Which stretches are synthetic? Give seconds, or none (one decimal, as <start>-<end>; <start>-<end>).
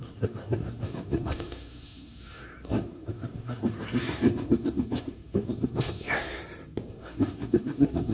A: 0.0-6.4; 6.9-8.1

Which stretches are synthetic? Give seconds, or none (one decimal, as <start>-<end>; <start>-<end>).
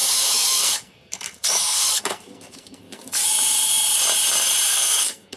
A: 0.0-3.2; 4.7-5.4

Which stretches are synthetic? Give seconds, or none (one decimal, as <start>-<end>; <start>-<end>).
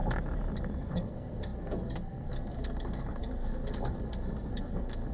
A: 0.6-5.1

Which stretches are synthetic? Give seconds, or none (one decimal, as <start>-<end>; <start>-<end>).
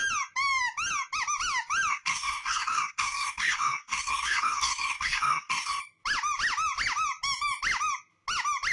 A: 1.9-5.8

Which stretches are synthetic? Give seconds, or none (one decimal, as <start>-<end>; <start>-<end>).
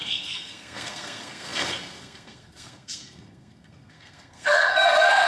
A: 0.0-5.3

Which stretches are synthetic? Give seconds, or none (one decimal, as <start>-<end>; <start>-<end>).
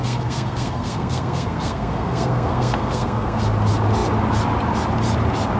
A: 0.0-3.4